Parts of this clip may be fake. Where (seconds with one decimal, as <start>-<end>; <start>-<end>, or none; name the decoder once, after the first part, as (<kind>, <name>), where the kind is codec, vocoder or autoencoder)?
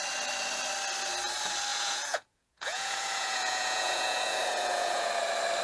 1.7-5.1 (vocoder, Vocos)